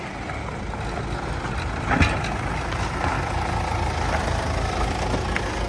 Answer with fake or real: real